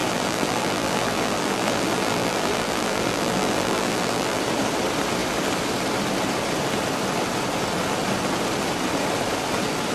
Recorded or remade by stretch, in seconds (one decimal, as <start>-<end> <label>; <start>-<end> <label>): 0.0-4.4 remade; 4.4-9.9 recorded